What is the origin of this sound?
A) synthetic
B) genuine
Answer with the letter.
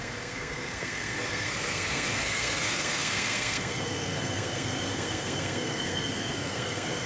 A